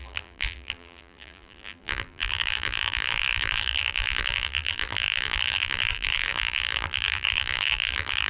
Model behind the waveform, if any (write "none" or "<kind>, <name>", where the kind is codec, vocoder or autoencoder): vocoder, BigVGAN v2